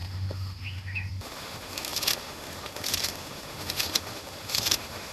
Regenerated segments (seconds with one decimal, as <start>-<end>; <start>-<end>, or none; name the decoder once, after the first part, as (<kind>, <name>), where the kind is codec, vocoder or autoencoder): 0.0-5.1 (autoencoder, DAC-VAE)